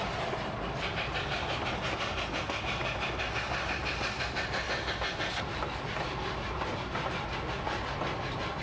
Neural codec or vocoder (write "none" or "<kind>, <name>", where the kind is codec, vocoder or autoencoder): none